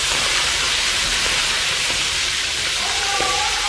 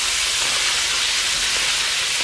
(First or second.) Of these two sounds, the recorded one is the second